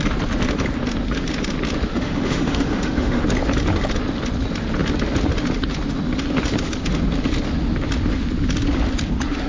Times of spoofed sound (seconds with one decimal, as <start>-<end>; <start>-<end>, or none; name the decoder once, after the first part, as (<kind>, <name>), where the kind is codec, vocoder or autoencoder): 1.9-3.2 (autoencoder, DAC-VAE)